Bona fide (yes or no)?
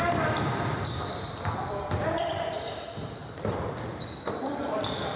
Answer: no